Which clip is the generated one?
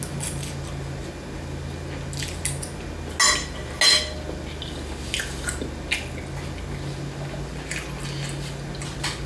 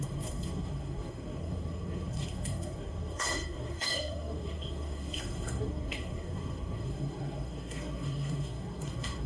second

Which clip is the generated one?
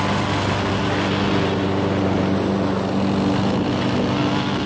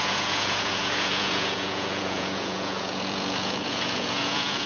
second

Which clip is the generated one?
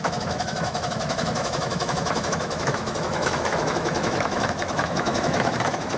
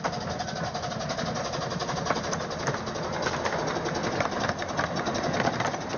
first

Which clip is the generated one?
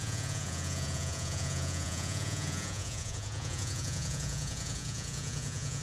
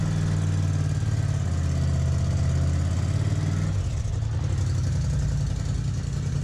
first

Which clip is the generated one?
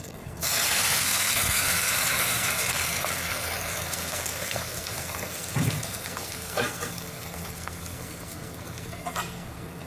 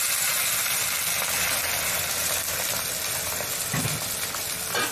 first